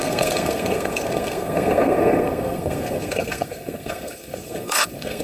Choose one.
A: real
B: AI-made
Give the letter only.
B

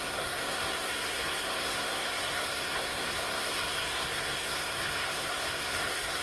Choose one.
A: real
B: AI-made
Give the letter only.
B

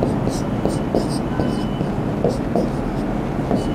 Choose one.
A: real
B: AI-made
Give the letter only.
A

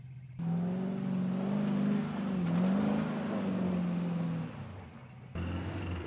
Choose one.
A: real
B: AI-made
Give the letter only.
A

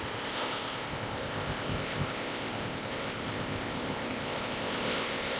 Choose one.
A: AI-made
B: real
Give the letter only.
A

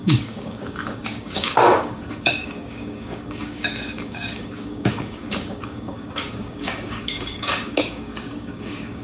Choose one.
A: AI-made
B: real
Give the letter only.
A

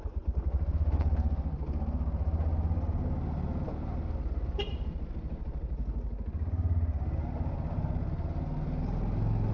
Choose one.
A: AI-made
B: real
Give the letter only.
B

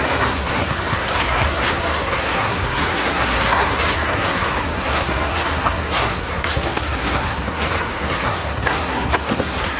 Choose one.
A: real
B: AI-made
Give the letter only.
B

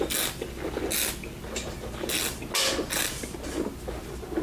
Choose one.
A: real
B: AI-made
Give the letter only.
A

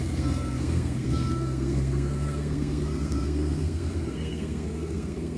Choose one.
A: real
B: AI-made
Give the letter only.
B